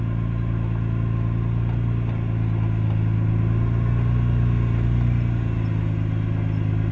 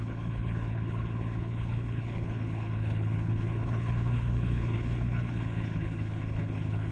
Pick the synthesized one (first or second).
second